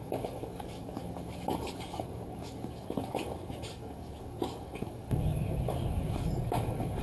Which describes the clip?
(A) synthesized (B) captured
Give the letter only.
A